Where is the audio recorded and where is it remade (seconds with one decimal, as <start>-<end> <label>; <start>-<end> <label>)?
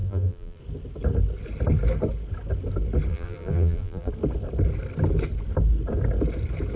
0.0-0.6 remade; 0.6-3.1 recorded; 3.1-4.1 remade; 4.1-6.8 recorded